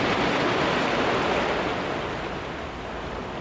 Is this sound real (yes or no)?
yes